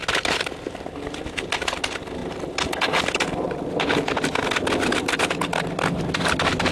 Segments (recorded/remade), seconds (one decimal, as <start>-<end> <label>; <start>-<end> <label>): 0.0-6.7 recorded